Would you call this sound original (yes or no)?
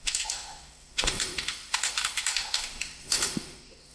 no